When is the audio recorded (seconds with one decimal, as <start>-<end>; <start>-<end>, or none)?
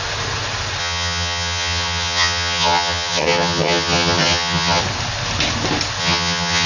0.0-0.8; 4.8-6.0